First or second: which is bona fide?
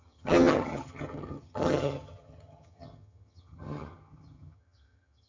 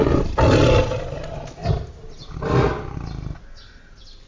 second